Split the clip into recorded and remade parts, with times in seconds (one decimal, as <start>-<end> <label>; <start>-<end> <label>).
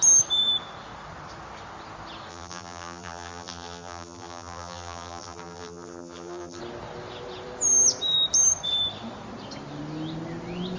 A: 0.0-2.3 recorded; 2.3-6.6 remade; 6.6-10.8 recorded